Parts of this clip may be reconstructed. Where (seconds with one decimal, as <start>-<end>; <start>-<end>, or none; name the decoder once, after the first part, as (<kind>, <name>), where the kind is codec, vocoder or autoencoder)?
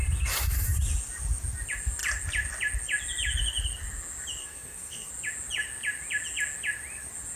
4.4-5.1 (codec, SNAC)